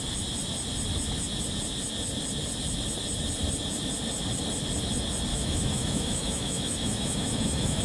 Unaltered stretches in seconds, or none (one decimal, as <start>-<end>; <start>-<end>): 0.0-5.3